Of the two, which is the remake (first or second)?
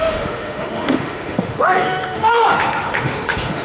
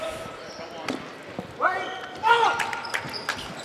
first